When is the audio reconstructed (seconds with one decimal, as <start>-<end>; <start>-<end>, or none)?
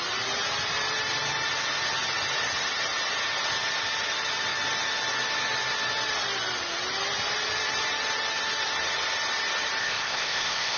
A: 9.8-10.8